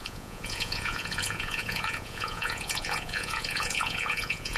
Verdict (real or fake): fake